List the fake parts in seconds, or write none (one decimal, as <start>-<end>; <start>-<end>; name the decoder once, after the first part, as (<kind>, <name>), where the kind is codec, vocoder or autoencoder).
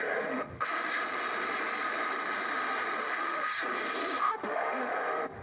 0.0-1.0 (autoencoder, DAC-VAE); 3.0-3.5; 4.2-5.4